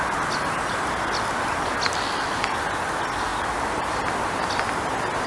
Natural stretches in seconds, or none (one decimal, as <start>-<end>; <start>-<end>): 0.0-5.3

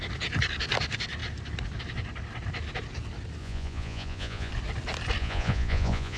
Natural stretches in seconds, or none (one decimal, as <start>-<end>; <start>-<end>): 0.0-3.4; 4.5-5.2